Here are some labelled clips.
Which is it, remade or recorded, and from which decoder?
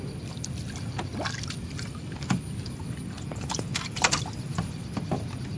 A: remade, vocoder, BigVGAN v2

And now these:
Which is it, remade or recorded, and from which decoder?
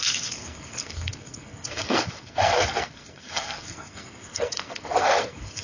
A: remade, codec, SNAC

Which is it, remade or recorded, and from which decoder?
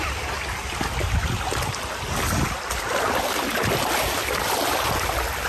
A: recorded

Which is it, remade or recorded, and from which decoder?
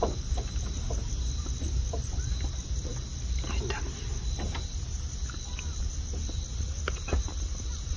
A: recorded